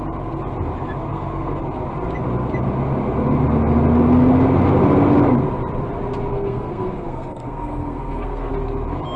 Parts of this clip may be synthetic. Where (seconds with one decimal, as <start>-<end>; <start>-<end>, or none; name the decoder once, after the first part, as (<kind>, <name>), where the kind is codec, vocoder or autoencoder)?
1.1-1.6 (codec, SNAC); 6.3-8.5